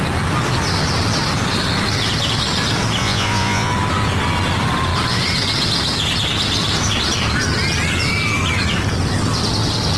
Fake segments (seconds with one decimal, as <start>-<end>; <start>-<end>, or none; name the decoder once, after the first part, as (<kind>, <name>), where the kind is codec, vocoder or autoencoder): 3.0-3.7 (vocoder, Vocos)